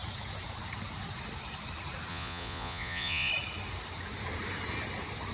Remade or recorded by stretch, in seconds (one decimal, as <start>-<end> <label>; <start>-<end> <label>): 0.0-2.1 recorded; 2.1-3.3 remade; 3.3-5.3 recorded

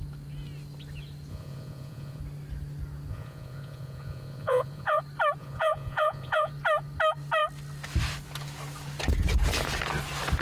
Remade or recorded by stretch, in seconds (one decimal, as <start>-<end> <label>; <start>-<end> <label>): 0.0-1.3 recorded; 1.3-2.2 remade; 2.2-3.1 recorded; 3.1-5.0 remade; 5.0-5.4 recorded; 5.4-6.5 remade; 6.5-10.4 recorded

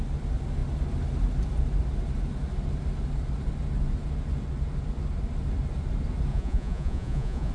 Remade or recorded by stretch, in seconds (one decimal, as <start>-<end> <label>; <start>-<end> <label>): 0.0-6.3 recorded; 6.3-7.5 remade

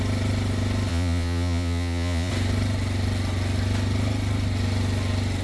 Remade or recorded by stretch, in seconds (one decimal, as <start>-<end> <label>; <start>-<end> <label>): 0.0-0.9 recorded; 0.9-2.3 remade; 2.3-5.4 recorded

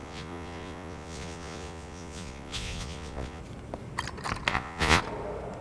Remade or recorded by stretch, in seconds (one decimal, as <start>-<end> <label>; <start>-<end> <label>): 0.0-3.4 remade; 3.4-4.5 recorded; 4.5-5.0 remade; 5.0-5.6 recorded

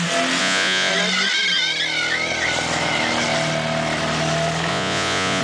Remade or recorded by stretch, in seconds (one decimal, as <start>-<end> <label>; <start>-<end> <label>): 0.0-0.4 recorded; 0.4-0.9 remade; 0.9-4.7 recorded; 4.7-5.4 remade